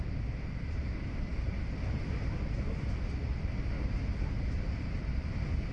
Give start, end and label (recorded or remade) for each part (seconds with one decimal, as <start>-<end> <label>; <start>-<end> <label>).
0.0-1.3 recorded; 1.3-2.0 remade; 2.0-5.7 recorded